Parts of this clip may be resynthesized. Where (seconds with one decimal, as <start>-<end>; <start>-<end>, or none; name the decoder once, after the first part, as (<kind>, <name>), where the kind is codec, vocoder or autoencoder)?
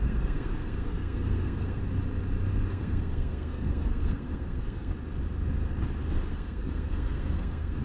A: 0.0-1.8 (codec, SNAC); 2.7-4.9; 6.3-7.8